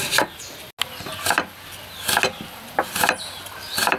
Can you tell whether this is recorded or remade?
recorded